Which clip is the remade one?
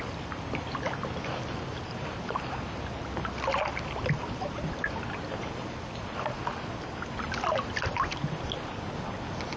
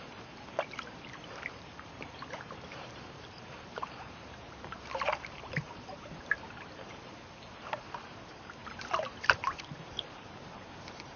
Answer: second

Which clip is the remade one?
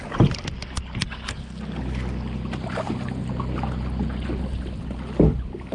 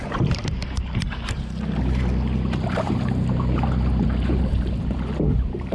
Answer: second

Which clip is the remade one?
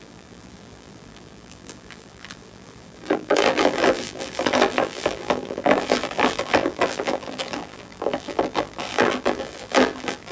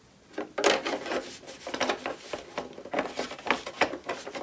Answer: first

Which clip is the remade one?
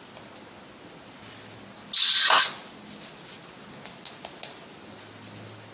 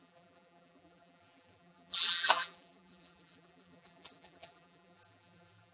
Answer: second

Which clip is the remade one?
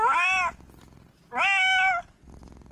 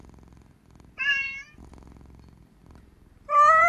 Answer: second